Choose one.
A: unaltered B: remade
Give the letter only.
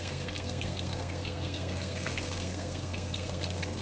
B